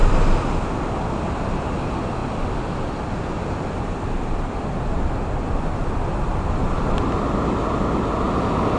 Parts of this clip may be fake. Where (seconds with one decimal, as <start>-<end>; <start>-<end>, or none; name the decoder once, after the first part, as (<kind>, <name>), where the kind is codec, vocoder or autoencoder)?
none